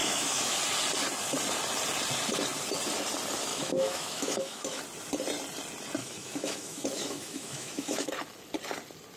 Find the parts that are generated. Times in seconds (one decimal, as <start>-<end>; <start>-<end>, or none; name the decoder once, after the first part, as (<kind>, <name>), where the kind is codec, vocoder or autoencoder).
0.0-0.6 (autoencoder, DAC-VAE); 3.5-4.8; 6.0-8.1